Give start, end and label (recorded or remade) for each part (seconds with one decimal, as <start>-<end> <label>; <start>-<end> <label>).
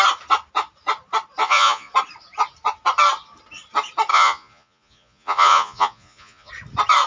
0.0-1.4 recorded; 1.4-1.9 remade; 1.9-4.1 recorded; 4.1-6.5 remade; 6.5-7.1 recorded